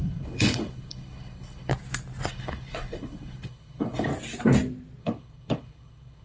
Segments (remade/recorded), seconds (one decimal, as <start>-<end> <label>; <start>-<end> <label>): 0.0-1.7 remade; 1.7-2.3 recorded; 2.3-4.1 remade; 4.1-5.0 recorded; 5.0-6.2 remade